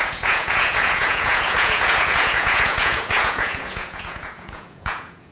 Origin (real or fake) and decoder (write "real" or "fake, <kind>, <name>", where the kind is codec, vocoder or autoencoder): fake, vocoder, Vocos